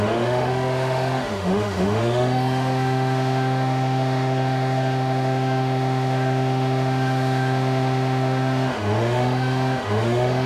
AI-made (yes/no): yes